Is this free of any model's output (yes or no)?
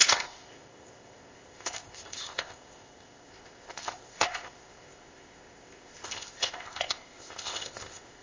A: no